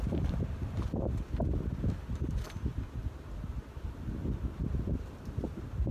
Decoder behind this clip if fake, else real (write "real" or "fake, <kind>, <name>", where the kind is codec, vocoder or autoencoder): real